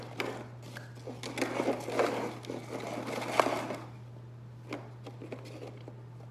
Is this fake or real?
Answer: real